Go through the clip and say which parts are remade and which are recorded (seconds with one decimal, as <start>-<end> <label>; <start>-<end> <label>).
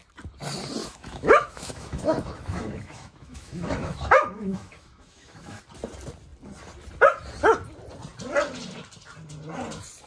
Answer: 0.0-0.8 recorded; 0.8-5.6 remade; 5.6-10.1 recorded